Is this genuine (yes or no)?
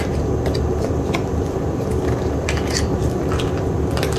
yes